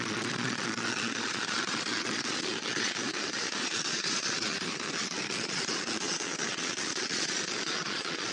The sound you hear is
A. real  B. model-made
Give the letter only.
B